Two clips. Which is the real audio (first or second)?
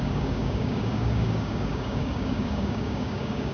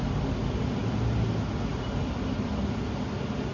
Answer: second